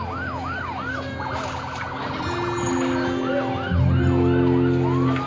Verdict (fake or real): real